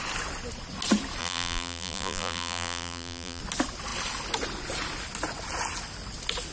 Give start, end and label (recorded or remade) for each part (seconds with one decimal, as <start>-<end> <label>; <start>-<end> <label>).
0.0-1.2 recorded; 1.2-3.4 remade; 3.4-6.5 recorded